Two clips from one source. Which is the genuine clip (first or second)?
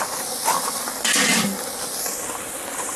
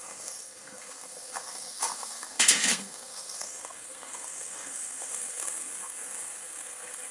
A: first